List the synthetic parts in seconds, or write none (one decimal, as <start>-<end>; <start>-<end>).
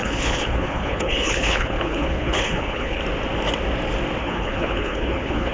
0.0-3.0; 4.2-5.5